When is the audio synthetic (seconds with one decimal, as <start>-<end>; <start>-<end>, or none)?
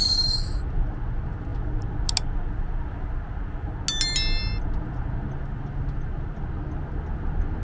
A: none